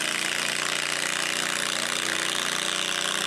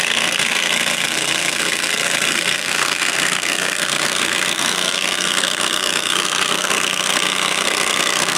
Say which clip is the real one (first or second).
first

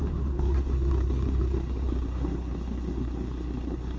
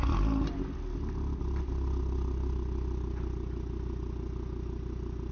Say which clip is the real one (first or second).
second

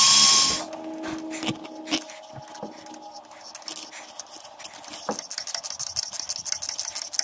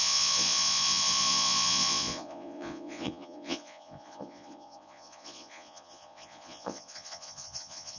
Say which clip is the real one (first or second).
first